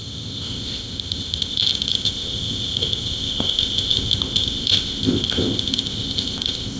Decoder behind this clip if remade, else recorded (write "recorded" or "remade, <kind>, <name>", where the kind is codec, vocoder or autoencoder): remade, codec, ZipCodec